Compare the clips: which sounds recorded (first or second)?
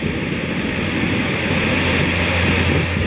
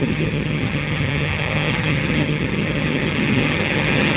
first